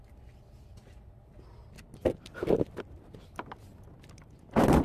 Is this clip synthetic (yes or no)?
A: no